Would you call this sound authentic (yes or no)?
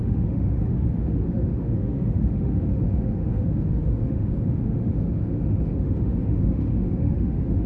no